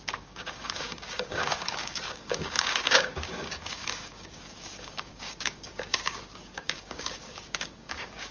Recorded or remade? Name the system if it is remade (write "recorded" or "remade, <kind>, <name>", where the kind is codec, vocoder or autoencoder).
remade, codec, DAC